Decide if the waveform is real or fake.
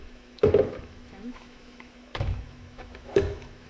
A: fake